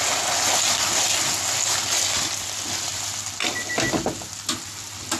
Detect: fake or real real